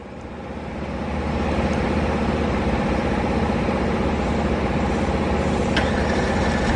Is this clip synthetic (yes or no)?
no